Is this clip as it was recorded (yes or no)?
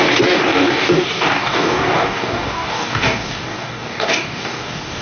no